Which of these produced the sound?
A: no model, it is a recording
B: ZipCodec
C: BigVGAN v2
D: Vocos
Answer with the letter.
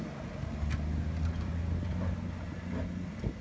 A